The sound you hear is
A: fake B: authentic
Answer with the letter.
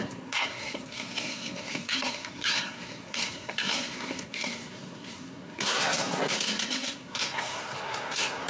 A